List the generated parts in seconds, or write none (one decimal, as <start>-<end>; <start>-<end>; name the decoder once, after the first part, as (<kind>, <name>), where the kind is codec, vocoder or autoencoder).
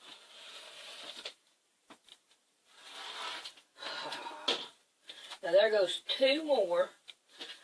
0.0-2.9 (vocoder, BigVGAN v2); 4.6-7.6